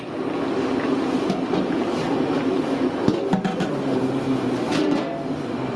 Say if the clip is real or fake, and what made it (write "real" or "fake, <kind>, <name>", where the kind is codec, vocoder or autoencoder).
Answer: real